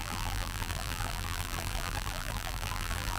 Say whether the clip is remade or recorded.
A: remade